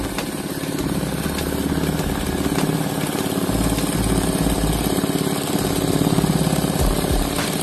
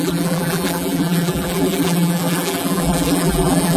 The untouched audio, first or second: first